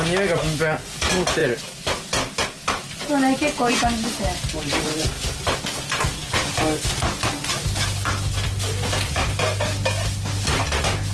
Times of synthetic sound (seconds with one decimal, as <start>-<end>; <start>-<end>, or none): none